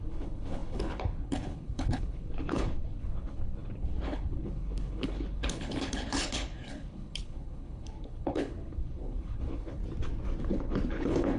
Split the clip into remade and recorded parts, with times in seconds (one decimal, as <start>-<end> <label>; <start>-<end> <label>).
0.0-9.8 remade; 9.8-10.4 recorded; 10.4-11.4 remade